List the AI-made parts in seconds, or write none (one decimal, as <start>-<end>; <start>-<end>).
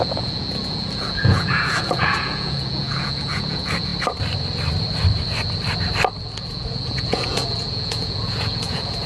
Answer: 0.0-3.9; 6.2-9.1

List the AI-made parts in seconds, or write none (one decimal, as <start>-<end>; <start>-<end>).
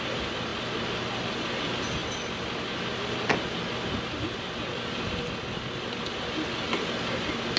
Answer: none